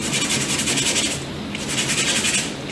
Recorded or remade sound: recorded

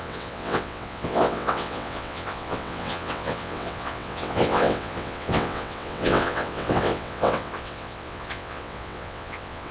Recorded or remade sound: remade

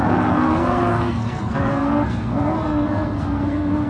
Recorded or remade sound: remade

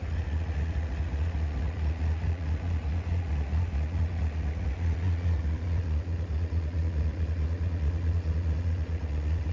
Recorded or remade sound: remade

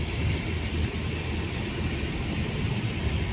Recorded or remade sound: recorded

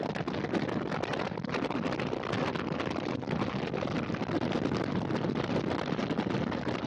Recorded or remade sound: recorded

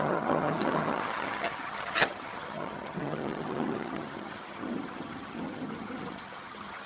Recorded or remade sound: remade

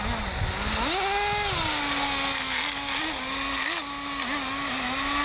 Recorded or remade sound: recorded